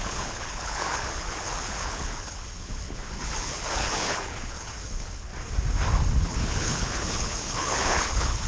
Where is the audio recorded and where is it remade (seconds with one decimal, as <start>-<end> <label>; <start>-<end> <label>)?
0.0-5.3 remade; 5.3-6.2 recorded; 6.2-8.5 remade